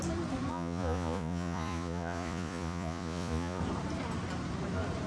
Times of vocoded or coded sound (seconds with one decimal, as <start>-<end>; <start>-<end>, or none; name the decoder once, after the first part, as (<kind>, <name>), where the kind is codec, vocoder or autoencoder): 0.5-3.6 (vocoder, Vocos)